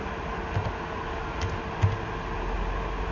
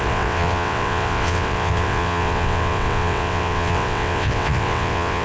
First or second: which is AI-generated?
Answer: second